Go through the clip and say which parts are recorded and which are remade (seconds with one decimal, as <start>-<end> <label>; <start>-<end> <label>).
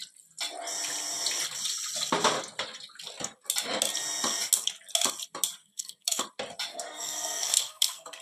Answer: 0.0-5.6 recorded; 5.6-6.2 remade; 6.2-6.7 recorded; 6.7-8.2 remade